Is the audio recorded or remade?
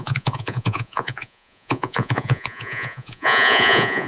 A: remade